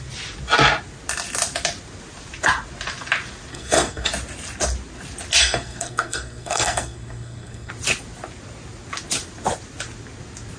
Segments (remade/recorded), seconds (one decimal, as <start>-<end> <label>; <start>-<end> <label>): 0.0-3.5 recorded; 3.5-4.1 remade; 4.1-5.4 recorded; 5.4-7.7 remade; 7.7-10.6 recorded